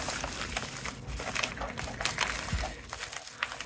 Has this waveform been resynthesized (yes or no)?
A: no